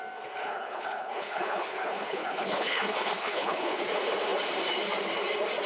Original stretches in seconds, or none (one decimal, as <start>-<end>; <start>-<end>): 0.0-0.4; 3.8-5.7